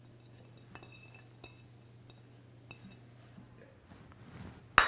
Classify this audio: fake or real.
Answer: real